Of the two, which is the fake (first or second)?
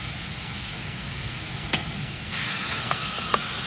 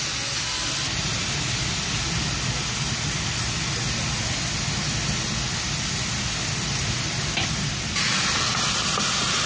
first